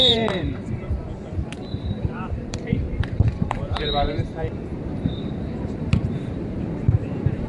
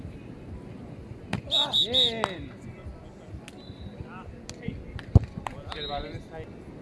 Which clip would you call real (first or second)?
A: second